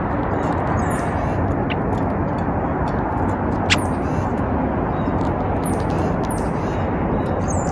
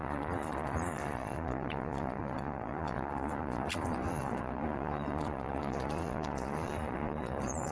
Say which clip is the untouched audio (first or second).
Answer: first